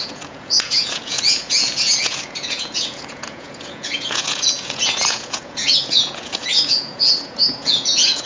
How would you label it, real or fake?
fake